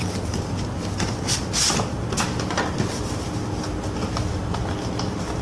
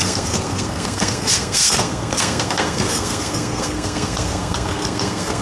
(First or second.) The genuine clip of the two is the first